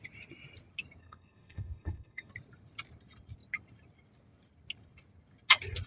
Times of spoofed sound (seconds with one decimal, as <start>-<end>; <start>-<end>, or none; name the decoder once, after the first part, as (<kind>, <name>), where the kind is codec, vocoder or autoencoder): 1.0-2.3 (codec, SNAC)